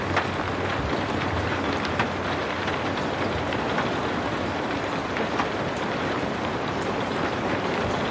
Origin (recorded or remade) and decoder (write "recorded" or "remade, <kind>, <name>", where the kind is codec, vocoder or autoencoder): recorded